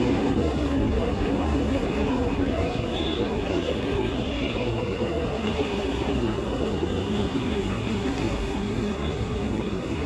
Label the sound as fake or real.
fake